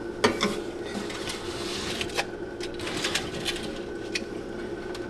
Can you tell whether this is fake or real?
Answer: real